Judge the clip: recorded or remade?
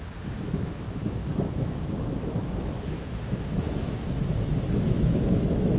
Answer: remade